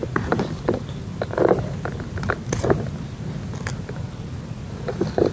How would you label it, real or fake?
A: real